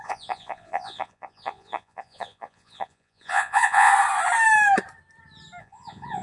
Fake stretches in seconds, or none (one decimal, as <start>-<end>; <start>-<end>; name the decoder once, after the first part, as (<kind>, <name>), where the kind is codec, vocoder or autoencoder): 0.0-3.9 (vocoder, Vocos); 5.6-6.2